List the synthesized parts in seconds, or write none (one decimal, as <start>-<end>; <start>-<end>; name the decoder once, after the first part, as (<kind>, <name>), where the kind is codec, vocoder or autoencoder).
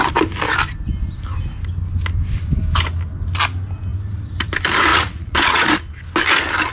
4.9-5.6 (vocoder, Vocos)